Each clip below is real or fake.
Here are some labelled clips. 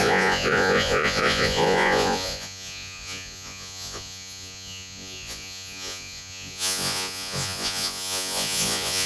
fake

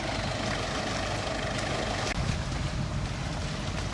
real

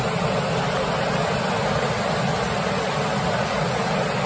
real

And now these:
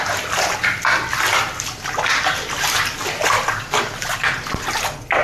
real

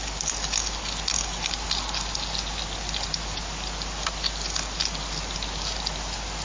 real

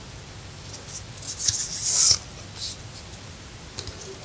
real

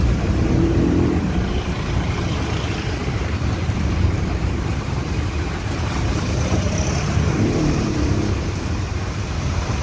fake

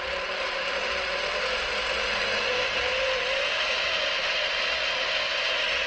real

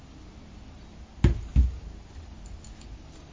real